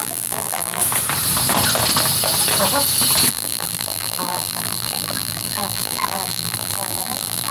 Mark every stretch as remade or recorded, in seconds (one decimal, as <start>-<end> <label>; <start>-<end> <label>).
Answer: 0.0-0.8 remade; 0.8-3.3 recorded; 3.3-7.5 remade